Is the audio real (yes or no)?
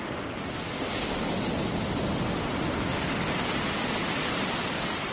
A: yes